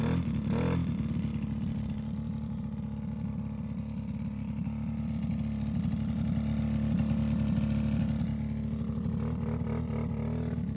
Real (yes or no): yes